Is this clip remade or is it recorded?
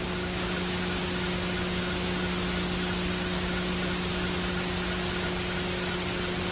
recorded